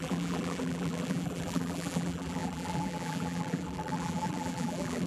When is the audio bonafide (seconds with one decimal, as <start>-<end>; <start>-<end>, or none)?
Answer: none